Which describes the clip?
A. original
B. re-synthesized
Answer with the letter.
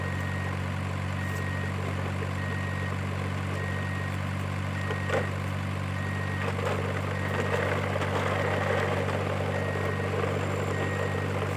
A